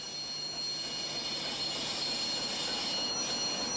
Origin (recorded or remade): recorded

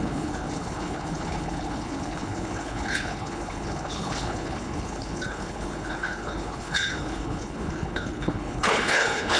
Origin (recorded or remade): remade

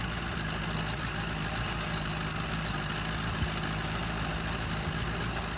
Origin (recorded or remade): recorded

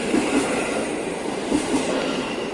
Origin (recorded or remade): recorded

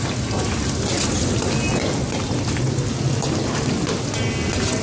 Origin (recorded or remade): recorded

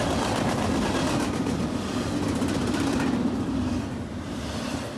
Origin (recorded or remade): recorded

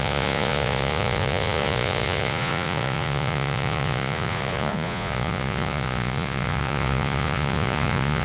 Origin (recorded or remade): remade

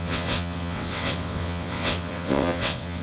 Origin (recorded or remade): remade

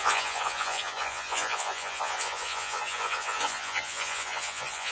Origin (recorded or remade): remade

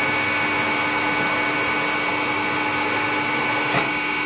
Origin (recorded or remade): recorded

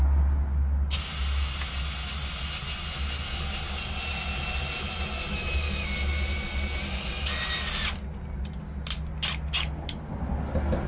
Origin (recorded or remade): recorded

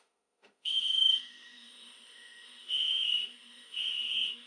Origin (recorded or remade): remade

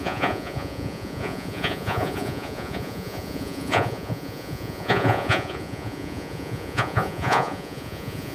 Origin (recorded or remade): remade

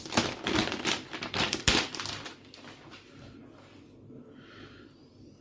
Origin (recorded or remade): remade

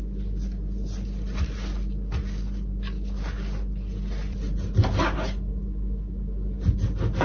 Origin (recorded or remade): recorded